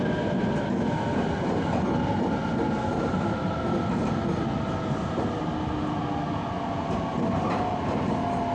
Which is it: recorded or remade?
recorded